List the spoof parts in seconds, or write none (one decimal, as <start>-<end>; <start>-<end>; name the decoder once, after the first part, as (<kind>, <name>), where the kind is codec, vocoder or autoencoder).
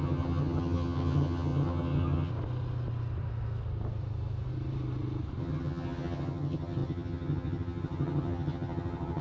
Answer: 0.0-2.3 (vocoder, HiFi-GAN); 5.4-9.2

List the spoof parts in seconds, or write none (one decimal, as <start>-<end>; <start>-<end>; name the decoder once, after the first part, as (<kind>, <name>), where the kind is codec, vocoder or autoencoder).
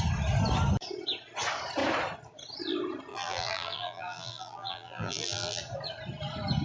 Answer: 3.1-5.6 (vocoder, BigVGAN v2)